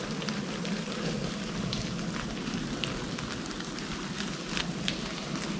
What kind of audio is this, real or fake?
real